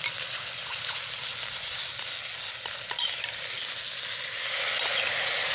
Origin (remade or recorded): recorded